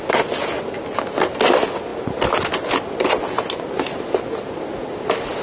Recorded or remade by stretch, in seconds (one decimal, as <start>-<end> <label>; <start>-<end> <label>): 0.0-5.4 recorded